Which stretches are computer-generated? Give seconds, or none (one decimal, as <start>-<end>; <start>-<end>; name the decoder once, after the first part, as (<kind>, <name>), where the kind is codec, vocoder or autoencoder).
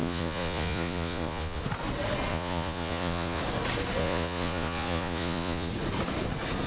0.0-1.6 (vocoder, Vocos); 2.3-3.4; 4.0-5.7